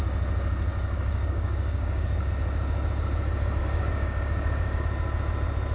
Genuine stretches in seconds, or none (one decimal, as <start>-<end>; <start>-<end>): 0.0-0.7; 2.3-3.6; 4.8-5.7